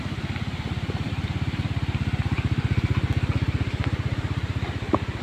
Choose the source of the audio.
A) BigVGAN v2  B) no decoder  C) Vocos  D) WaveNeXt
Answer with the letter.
A